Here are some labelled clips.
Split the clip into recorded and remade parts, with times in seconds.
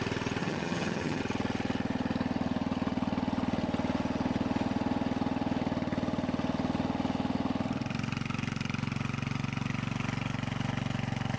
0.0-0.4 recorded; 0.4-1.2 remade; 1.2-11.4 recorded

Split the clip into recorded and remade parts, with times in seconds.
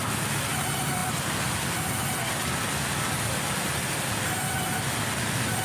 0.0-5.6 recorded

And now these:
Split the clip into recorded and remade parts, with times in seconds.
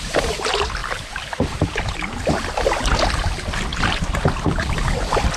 0.0-3.7 recorded; 3.7-4.2 remade; 4.2-5.4 recorded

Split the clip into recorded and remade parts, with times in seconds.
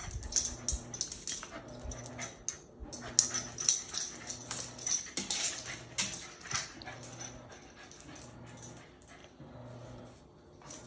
0.0-10.9 recorded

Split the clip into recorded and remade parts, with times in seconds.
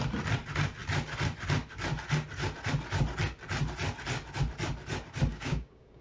0.0-5.3 recorded; 5.3-6.0 remade